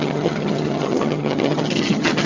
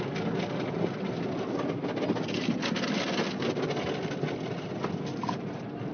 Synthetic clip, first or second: first